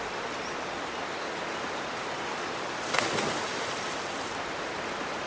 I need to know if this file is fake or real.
real